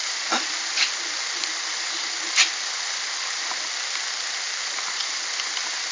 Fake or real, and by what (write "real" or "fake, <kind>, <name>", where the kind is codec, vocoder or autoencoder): real